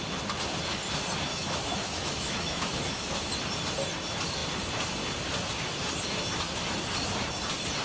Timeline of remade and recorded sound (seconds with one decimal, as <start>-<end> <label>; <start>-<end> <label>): 0.0-1.3 recorded; 1.3-3.3 remade; 3.3-7.8 recorded